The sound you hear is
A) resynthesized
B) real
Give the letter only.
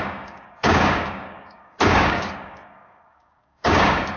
A